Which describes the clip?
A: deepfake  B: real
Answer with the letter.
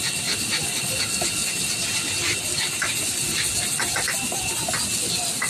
B